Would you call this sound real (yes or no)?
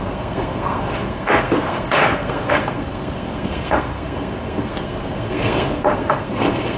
no